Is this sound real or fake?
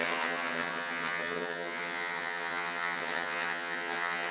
fake